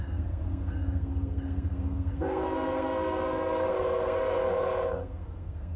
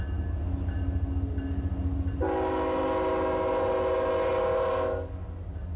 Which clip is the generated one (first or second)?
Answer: first